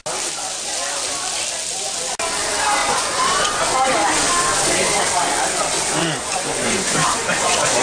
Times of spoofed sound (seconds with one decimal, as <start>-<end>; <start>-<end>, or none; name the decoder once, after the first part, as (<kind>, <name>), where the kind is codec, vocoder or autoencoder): 2.8-3.6 (vocoder, Vocos); 4.5-5.0; 6.0-7.8